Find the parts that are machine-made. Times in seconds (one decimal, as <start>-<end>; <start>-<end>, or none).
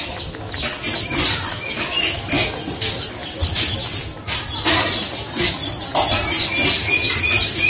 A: 1.5-2.3